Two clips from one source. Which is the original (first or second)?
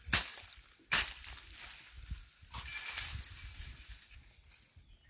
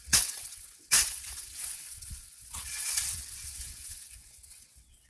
first